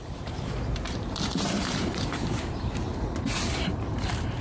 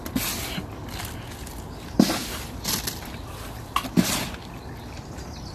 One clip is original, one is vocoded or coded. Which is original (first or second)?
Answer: second